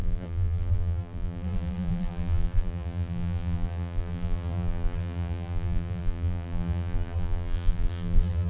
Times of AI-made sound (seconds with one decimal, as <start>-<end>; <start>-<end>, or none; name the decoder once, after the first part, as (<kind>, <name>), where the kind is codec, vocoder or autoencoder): 0.0-8.5 (vocoder, BigVGAN v2)